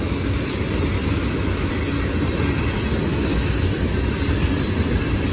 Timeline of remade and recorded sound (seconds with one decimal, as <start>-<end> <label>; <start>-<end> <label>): 0.0-1.0 recorded; 1.0-1.7 remade; 1.7-3.1 recorded; 3.1-4.2 remade; 4.2-5.3 recorded